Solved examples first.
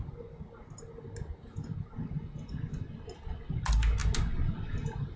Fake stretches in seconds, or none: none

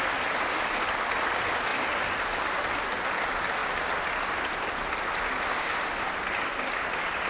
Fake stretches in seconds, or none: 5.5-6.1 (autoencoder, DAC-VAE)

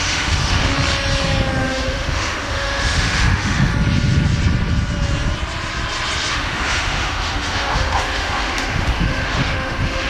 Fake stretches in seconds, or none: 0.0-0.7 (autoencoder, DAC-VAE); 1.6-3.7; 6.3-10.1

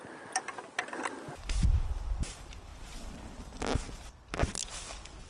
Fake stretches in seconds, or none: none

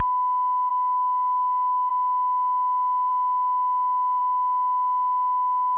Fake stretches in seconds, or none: 0.7-1.9 (autoencoder, DAC-VAE)

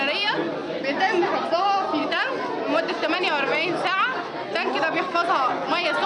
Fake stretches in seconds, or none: none

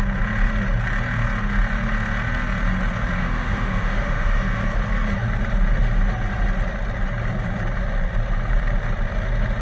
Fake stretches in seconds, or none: 3.2-4.6 (autoencoder, DAC-VAE)